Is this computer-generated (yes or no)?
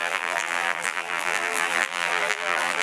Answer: yes